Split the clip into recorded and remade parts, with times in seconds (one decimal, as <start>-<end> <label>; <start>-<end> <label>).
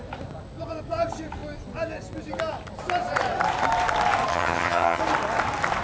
0.0-4.3 recorded; 4.3-5.0 remade; 5.0-5.8 recorded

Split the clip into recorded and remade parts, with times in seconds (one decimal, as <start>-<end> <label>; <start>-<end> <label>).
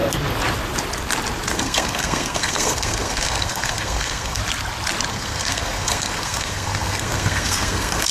0.0-1.5 recorded; 1.5-4.4 remade; 4.4-5.1 recorded; 5.1-8.1 remade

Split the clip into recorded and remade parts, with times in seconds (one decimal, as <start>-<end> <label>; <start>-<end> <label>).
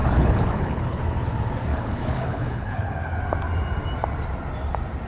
0.0-1.0 remade; 1.0-1.7 recorded; 1.7-3.1 remade; 3.1-5.1 recorded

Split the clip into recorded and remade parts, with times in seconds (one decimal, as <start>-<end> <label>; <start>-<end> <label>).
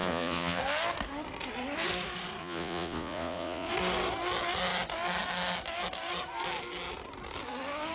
0.0-0.6 remade; 0.6-2.4 recorded; 2.4-3.7 remade; 3.7-7.9 recorded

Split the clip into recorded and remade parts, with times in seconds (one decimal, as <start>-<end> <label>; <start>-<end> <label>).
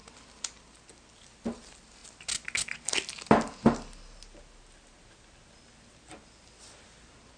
0.0-7.4 recorded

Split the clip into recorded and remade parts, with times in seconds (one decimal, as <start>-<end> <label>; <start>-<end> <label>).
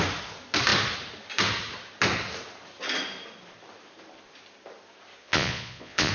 0.0-5.2 recorded; 5.2-6.1 remade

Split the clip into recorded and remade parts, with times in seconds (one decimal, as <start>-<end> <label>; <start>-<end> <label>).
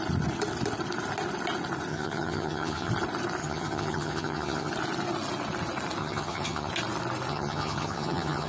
0.0-1.9 recorded; 1.9-2.9 remade; 2.9-3.4 recorded; 3.4-4.7 remade; 4.7-6.0 recorded; 6.0-6.7 remade; 6.7-7.3 recorded; 7.3-8.5 remade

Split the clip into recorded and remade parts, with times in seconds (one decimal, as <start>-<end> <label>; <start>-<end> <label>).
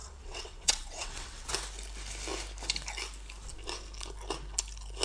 0.0-1.5 remade; 1.5-5.0 recorded